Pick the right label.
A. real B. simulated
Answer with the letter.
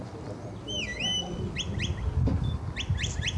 A